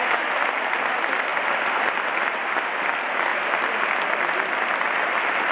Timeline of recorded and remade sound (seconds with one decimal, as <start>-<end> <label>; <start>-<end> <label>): 0.0-5.5 recorded